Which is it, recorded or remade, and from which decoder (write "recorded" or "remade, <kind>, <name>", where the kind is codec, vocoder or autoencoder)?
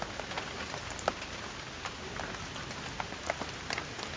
recorded